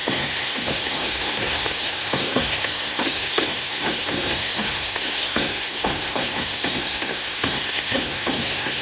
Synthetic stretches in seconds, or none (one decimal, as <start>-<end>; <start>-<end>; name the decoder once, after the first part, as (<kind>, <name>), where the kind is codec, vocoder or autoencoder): 0.0-8.8 (codec, SNAC)